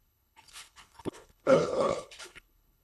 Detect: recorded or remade remade